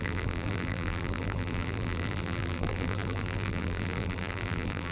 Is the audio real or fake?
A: fake